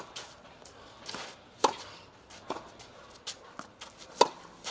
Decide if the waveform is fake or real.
real